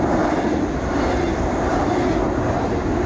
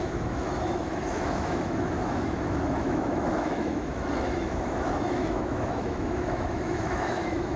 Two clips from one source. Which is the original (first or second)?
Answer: first